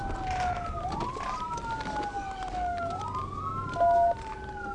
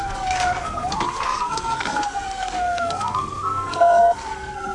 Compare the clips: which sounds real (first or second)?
first